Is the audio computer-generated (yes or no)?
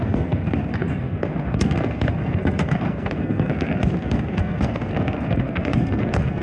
yes